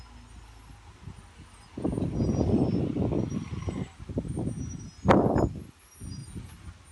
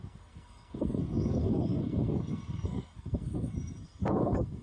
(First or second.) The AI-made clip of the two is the second